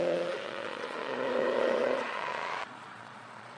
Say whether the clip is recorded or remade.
remade